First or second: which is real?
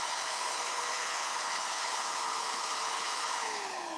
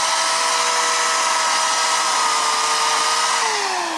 second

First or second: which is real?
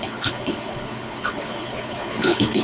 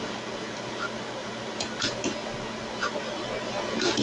second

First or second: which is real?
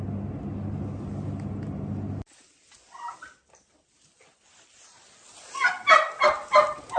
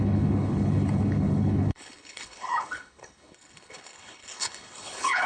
first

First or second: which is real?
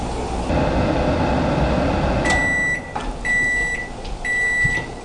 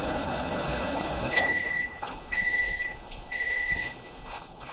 first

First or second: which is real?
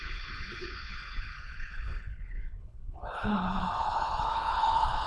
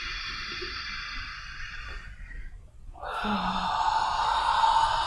second